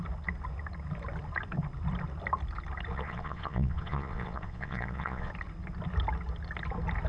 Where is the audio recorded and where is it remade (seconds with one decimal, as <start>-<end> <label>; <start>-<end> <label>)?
0.0-2.9 recorded; 2.9-5.3 remade; 5.3-7.1 recorded